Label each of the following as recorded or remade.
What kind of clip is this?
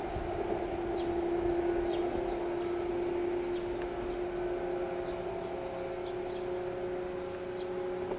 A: recorded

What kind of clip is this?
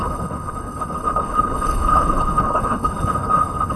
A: remade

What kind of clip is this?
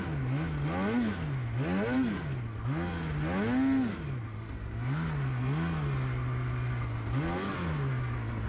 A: recorded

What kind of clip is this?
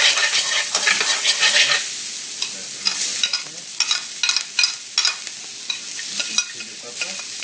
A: recorded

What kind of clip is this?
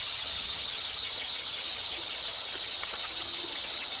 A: remade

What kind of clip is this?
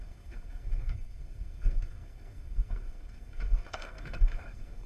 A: remade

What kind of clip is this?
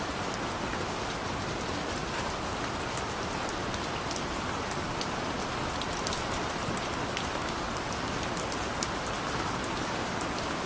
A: recorded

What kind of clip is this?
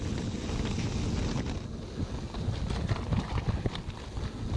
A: recorded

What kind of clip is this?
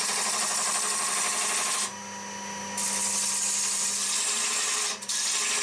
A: recorded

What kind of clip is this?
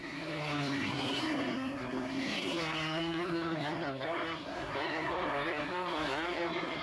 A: remade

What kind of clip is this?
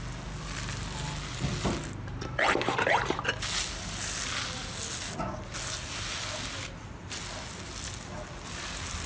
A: recorded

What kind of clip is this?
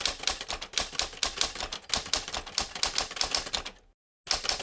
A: recorded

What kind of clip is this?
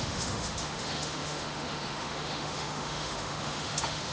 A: remade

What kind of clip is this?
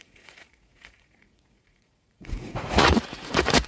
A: remade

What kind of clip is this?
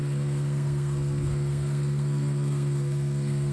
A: remade